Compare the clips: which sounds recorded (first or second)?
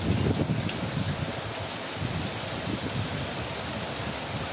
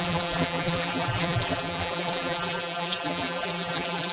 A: first